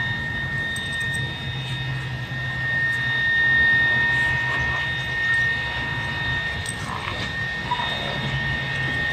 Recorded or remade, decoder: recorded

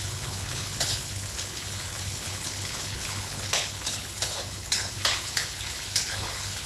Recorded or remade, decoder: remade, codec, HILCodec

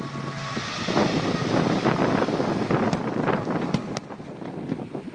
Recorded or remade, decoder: recorded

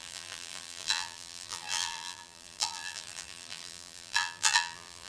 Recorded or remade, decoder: remade, vocoder, BigVGAN v2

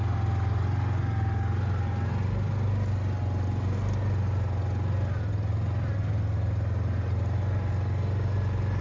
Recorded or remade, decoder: recorded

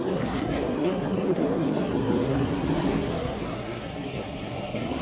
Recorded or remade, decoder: remade, codec, SNAC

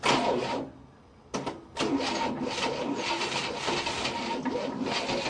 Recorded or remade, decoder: recorded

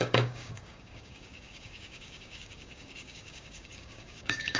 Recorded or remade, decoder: remade, codec, DAC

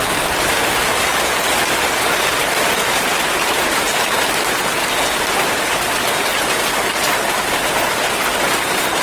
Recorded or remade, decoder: recorded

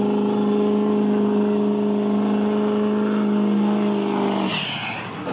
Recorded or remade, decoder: recorded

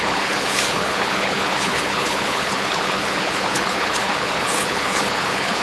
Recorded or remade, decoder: remade, codec, HILCodec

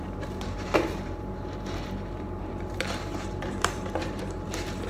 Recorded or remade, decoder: remade, vocoder, BigVGAN v2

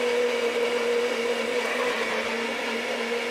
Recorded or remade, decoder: recorded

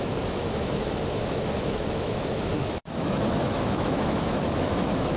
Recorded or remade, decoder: remade, autoencoder, DAC-VAE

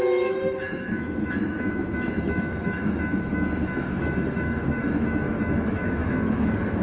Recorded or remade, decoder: remade, autoencoder, DAC-VAE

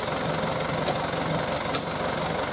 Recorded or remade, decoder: recorded